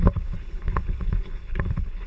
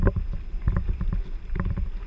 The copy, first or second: first